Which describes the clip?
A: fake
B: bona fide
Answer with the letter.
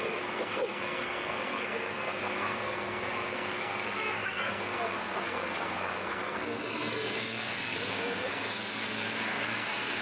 A